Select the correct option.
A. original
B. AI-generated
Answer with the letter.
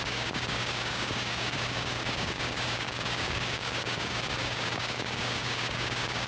B